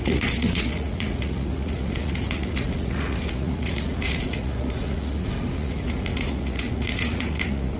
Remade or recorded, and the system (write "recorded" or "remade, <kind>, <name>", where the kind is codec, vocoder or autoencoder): remade, vocoder, Vocos